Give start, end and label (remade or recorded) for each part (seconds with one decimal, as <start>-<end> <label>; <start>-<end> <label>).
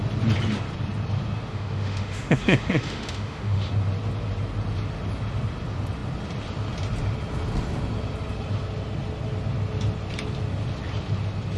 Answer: 0.0-1.5 recorded; 1.5-3.7 remade; 3.7-11.6 recorded